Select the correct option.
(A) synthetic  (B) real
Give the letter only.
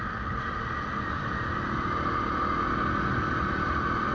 B